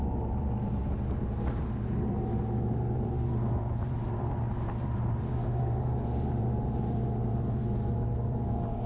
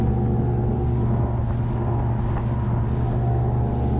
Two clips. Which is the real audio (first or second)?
second